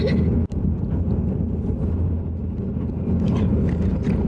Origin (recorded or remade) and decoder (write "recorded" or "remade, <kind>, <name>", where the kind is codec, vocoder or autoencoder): recorded